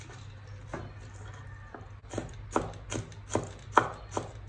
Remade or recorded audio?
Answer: recorded